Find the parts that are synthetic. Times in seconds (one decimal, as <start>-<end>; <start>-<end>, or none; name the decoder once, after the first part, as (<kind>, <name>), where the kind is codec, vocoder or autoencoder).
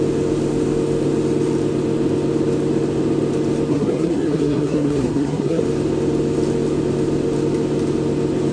3.7-5.6 (codec, SNAC)